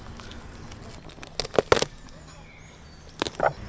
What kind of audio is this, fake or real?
real